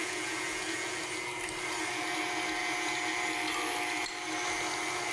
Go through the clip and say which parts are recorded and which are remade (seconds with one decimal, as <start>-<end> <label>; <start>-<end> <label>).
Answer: 0.0-1.0 remade; 1.0-5.1 recorded